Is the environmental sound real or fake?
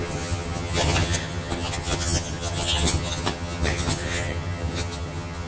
fake